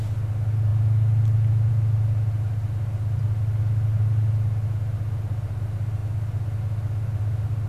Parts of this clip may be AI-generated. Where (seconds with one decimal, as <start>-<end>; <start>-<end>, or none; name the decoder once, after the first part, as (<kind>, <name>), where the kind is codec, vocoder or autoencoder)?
none